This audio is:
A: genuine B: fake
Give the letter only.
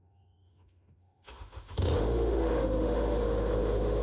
B